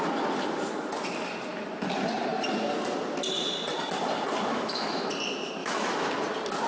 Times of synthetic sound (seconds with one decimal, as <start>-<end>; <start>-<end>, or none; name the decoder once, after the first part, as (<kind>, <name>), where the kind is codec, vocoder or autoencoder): 4.5-5.1 (autoencoder, DAC-VAE); 5.6-6.1